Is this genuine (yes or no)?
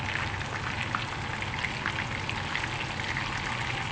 yes